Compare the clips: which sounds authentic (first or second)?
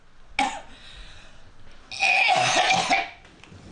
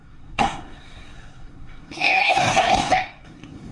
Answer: first